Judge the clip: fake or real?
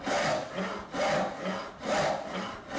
real